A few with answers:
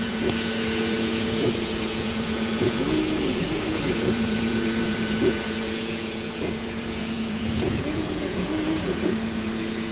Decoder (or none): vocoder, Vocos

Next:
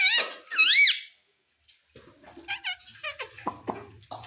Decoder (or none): none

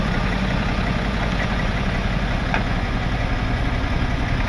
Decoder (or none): vocoder, Vocos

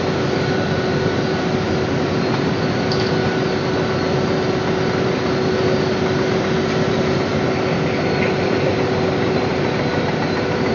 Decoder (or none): none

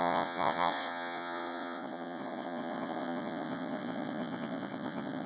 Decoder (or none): vocoder, Vocos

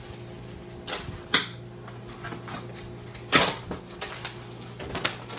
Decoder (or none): none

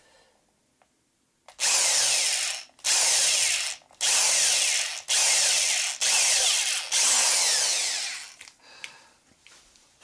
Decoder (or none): none